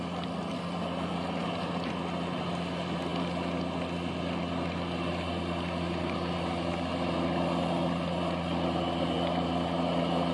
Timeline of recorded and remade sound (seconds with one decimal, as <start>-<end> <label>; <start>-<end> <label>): 0.0-10.3 recorded